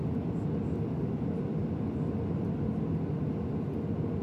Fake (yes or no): no